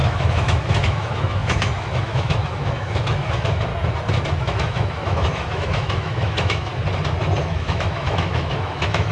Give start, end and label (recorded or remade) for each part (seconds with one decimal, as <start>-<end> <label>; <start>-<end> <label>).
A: 0.0-3.7 remade; 3.7-4.4 recorded; 4.4-6.7 remade; 6.7-7.4 recorded; 7.4-9.1 remade